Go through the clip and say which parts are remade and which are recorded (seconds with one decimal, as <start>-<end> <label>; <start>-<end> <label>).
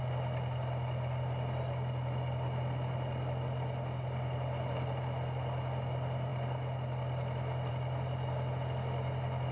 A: 0.0-9.5 recorded